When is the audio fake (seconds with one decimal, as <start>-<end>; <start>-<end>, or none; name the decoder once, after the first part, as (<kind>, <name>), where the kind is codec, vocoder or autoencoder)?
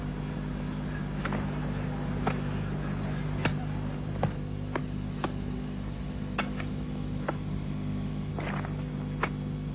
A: 4.8-8.3 (autoencoder, DAC-VAE)